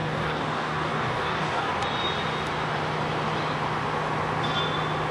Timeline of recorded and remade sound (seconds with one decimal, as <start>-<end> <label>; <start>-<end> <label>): 0.0-1.7 remade; 1.7-5.1 recorded

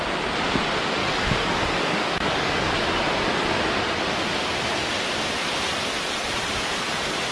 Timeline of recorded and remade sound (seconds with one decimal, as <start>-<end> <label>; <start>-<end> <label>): 0.0-1.0 recorded; 1.0-2.7 remade; 2.7-7.3 recorded

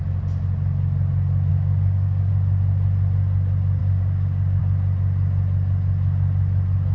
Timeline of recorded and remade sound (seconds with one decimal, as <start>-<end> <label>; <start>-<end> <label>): 0.0-1.5 recorded; 1.5-2.3 remade; 2.3-3.8 recorded; 3.8-4.6 remade; 4.6-6.9 recorded

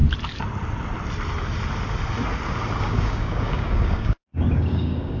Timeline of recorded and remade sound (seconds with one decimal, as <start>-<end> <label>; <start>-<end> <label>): 0.0-2.8 recorded; 2.8-5.2 remade

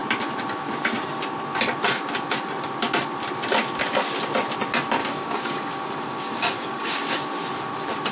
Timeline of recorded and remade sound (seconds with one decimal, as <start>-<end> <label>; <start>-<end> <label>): 0.0-5.0 recorded; 5.0-7.2 remade; 7.2-8.1 recorded

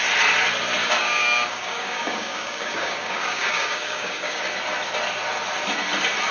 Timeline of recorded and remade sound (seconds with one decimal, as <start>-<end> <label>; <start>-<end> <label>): 0.0-0.8 recorded; 0.8-4.4 remade; 4.4-6.3 recorded

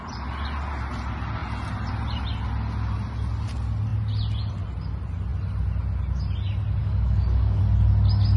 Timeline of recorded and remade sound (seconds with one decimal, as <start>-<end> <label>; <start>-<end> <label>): 0.0-6.8 recorded; 6.8-7.6 remade; 7.6-8.4 recorded

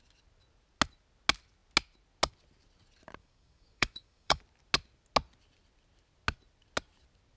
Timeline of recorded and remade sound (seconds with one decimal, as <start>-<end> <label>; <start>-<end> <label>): 0.0-3.2 recorded; 3.2-4.4 remade; 4.4-7.4 recorded